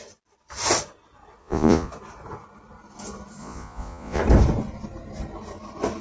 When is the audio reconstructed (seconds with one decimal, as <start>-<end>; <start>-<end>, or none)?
1.4-1.9; 3.4-4.2